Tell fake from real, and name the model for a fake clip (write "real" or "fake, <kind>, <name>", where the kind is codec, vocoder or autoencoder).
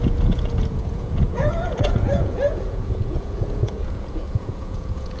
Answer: fake, vocoder, Vocos